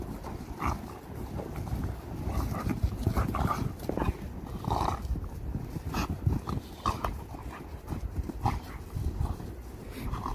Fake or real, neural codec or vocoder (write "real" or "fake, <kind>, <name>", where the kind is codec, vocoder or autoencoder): real